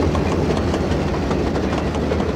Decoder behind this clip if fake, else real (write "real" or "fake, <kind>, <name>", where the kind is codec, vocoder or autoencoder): real